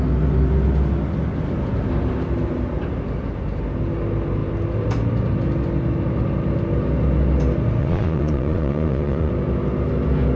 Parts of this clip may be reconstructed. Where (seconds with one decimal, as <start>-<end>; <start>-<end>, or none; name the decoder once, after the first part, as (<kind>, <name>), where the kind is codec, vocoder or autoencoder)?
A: 7.8-9.3 (vocoder, Vocos)